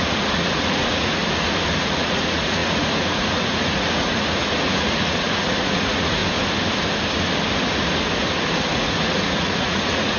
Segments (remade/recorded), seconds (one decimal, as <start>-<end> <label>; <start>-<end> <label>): 0.0-1.2 remade; 1.2-1.8 recorded; 1.8-6.2 remade; 6.2-8.6 recorded; 8.6-10.2 remade